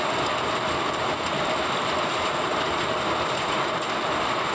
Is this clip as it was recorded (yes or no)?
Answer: yes